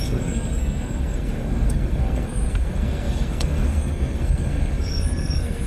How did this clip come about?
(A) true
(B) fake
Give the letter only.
B